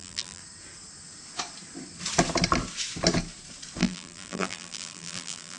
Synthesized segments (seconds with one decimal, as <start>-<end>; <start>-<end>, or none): 0.0-0.4; 3.8-5.6